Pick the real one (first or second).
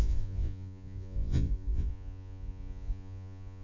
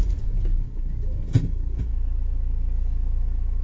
second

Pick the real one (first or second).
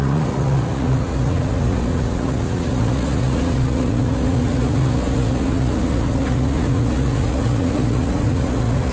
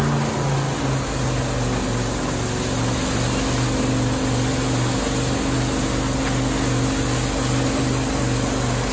second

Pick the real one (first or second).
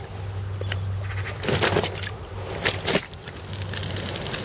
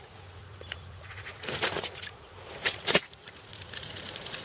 first